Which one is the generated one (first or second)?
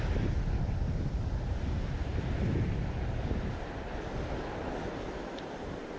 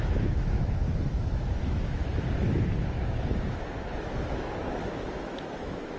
second